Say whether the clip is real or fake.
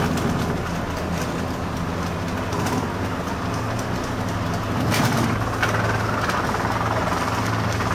real